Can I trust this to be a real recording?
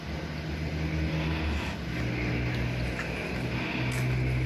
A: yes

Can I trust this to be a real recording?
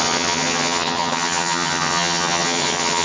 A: no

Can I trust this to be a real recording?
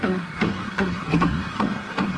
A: no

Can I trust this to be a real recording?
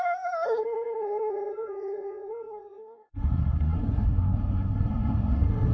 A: no